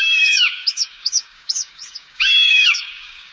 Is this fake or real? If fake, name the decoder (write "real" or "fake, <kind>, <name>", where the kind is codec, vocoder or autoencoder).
fake, codec, DAC